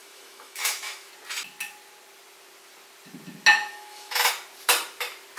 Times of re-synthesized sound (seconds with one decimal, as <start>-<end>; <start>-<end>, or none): 0.0-1.1; 3.5-4.3